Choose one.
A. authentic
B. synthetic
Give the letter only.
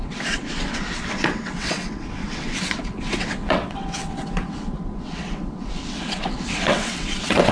B